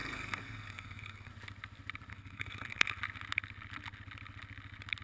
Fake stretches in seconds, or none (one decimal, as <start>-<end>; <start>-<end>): 0.0-1.3; 2.1-3.0